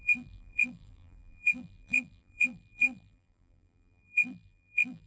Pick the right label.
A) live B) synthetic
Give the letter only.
B